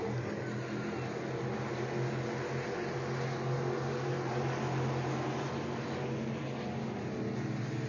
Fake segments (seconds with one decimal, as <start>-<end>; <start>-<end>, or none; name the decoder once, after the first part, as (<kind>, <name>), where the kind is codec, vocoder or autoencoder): none